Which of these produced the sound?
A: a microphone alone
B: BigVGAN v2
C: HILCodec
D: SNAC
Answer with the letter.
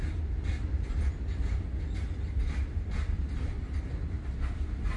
A